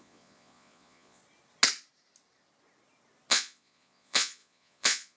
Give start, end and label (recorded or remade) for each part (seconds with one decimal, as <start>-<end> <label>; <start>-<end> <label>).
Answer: 0.0-1.2 remade; 1.2-3.3 recorded; 3.3-5.2 remade